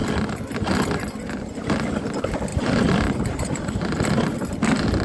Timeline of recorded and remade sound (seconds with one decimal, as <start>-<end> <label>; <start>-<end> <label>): 0.0-2.5 recorded; 2.5-3.8 remade; 3.8-5.0 recorded